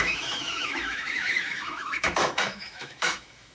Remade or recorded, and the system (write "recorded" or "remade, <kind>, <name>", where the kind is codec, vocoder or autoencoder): remade, autoencoder, DAC-VAE